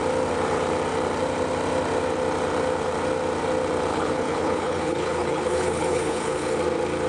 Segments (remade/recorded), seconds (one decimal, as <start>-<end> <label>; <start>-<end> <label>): 0.0-3.9 recorded; 3.9-6.6 remade; 6.6-7.1 recorded